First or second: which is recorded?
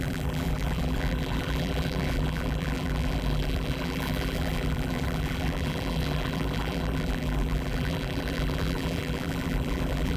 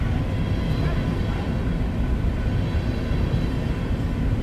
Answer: second